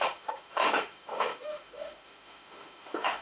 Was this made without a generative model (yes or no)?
no